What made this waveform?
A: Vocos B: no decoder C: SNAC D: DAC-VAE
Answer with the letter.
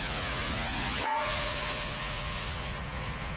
A